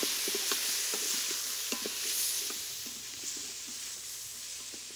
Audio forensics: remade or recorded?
recorded